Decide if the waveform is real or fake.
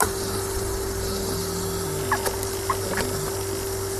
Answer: real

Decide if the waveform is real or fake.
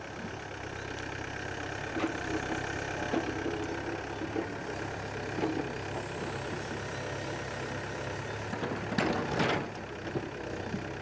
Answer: real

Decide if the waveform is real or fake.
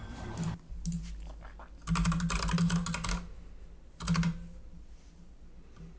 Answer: real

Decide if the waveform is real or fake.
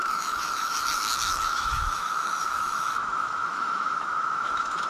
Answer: fake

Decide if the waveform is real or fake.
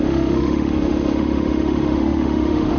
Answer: fake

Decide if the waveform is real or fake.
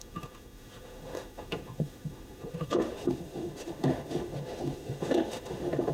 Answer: fake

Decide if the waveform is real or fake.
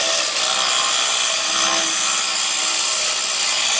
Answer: real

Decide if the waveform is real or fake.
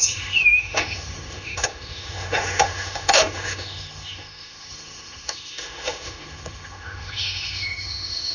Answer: fake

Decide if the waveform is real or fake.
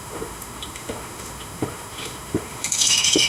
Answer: fake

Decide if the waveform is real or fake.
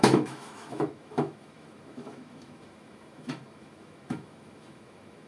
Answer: fake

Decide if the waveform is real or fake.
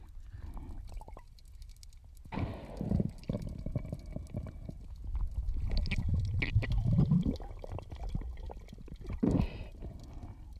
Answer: real